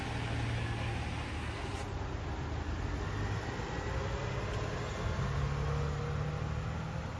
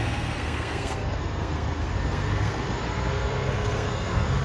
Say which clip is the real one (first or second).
first